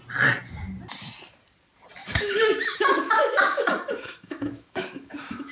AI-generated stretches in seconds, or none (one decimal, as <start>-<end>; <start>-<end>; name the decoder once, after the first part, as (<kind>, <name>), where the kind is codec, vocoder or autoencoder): 2.0-5.5 (autoencoder, DAC-VAE)